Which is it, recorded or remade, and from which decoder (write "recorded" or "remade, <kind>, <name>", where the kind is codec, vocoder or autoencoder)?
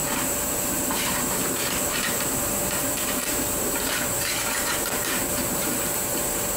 remade, vocoder, BigVGAN v2